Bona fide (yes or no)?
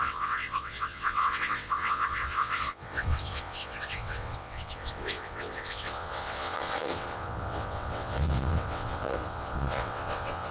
no